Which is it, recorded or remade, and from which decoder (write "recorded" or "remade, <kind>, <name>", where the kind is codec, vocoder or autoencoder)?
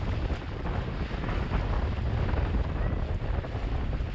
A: recorded